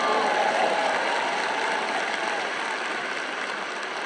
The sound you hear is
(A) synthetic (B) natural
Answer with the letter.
B